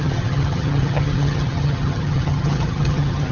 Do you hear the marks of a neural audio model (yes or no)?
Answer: yes